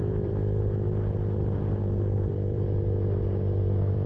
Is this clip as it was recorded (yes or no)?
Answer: no